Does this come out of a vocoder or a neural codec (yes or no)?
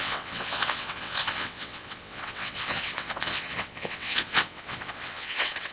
yes